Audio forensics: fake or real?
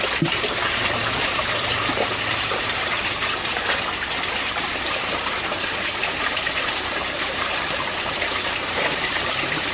fake